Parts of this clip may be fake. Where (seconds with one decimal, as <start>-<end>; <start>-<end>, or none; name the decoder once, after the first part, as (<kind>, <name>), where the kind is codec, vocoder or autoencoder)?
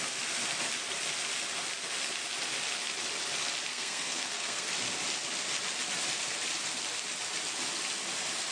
3.7-4.7 (codec, SNAC)